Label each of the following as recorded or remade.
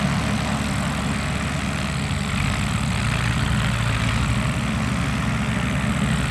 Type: recorded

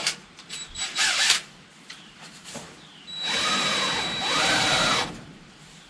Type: remade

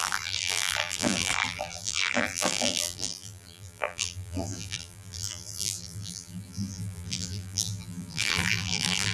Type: remade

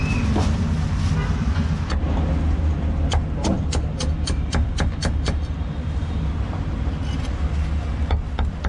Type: recorded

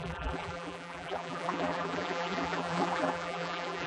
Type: remade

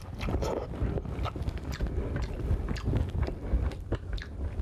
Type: recorded